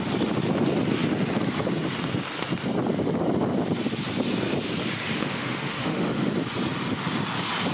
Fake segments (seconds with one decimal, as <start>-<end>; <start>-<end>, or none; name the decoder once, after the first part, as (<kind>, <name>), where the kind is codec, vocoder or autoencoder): 5.2-6.3 (autoencoder, DAC-VAE)

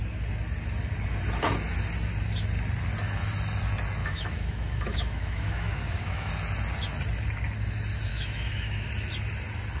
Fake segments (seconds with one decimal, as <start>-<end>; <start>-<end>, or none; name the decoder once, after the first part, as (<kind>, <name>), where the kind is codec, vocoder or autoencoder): 4.0-6.3 (autoencoder, DAC-VAE); 8.1-8.9